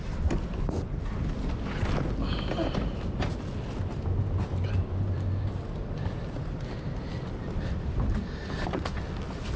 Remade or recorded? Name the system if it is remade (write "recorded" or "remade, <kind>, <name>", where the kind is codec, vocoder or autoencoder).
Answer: recorded